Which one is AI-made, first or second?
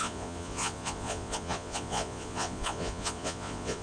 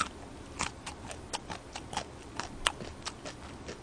first